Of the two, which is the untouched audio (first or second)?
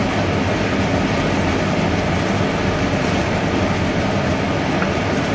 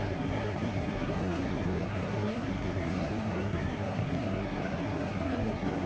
first